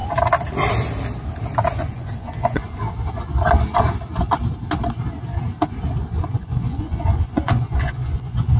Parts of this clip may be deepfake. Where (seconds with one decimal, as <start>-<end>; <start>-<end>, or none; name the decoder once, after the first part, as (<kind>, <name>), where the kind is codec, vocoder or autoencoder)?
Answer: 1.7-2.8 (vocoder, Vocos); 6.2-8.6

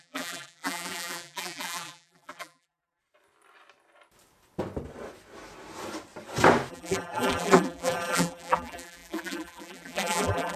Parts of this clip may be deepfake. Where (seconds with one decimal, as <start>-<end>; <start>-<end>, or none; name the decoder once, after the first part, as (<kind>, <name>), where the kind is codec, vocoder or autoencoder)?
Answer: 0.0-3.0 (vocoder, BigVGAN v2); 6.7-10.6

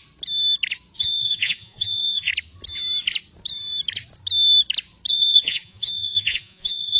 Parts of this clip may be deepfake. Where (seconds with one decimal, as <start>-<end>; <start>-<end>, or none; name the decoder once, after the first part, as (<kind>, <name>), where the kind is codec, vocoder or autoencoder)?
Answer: 1.0-2.3 (vocoder, Vocos); 5.1-7.0